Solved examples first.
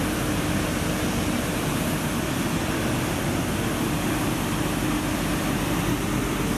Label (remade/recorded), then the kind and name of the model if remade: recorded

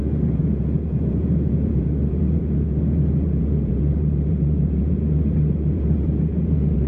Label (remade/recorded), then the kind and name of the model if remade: remade, vocoder, Vocos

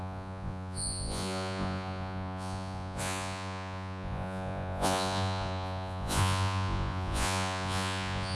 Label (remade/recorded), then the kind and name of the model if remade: remade, vocoder, Vocos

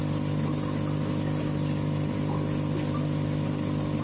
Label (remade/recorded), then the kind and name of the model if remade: recorded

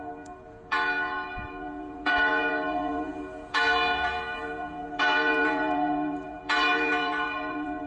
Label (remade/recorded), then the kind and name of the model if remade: remade, vocoder, Vocos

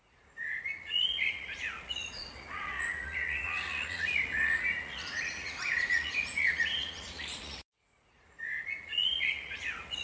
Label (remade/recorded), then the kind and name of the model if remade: remade, vocoder, Vocos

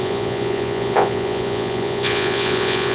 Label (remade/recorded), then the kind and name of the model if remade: remade, vocoder, Vocos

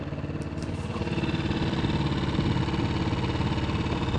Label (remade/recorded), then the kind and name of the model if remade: recorded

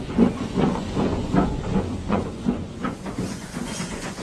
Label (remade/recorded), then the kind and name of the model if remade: remade, vocoder, Vocos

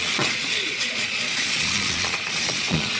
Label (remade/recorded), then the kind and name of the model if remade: remade, vocoder, Vocos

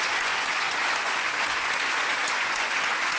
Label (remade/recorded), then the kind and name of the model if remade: remade, vocoder, Vocos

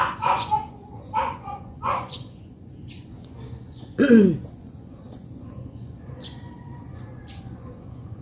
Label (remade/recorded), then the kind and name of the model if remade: remade, vocoder, Vocos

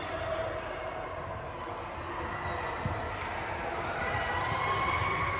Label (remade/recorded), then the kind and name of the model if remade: recorded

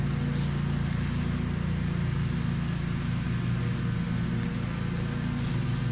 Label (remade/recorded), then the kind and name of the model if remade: recorded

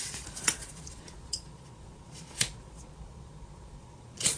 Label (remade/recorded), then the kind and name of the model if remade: remade, vocoder, Vocos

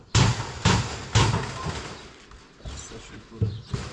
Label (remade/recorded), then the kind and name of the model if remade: recorded